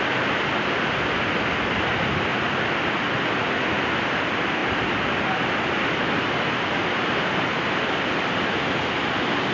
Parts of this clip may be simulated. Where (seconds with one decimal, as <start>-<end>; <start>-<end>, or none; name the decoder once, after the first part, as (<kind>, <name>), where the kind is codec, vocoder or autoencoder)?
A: none